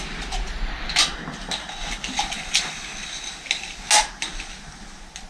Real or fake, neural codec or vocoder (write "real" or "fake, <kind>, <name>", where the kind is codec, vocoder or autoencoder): real